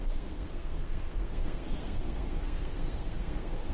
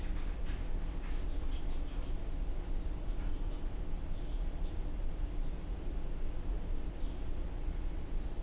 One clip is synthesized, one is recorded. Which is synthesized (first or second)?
first